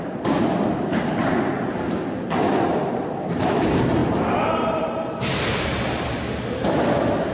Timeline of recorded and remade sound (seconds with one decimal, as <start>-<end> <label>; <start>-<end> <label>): 0.0-7.3 recorded